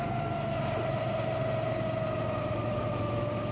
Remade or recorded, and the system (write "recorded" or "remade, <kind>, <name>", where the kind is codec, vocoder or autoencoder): recorded